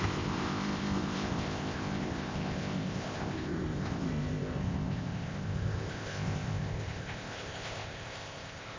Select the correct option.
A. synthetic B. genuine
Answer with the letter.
A